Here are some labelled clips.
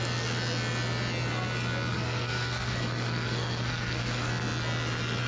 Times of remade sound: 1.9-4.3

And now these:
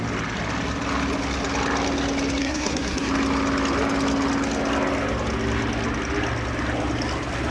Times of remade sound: 2.4-3.1

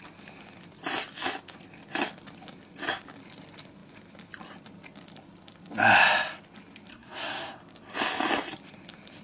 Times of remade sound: 6.9-7.6

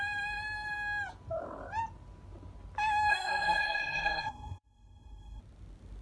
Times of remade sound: 3.1-5.4

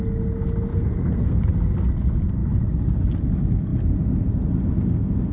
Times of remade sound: 0.7-1.4

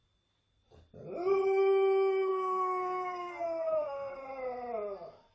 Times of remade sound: 2.3-4.2